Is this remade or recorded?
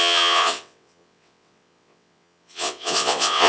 remade